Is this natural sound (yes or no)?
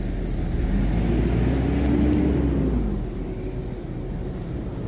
yes